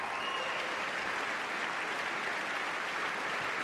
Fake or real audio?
real